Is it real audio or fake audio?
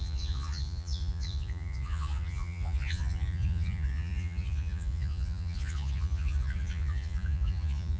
fake